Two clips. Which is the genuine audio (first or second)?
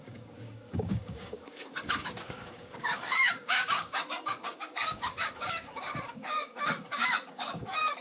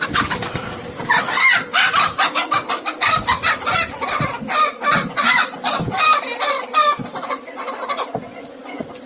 second